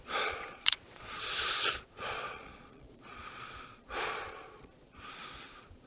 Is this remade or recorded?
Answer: remade